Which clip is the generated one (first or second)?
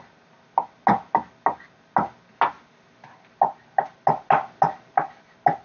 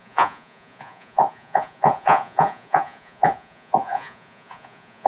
second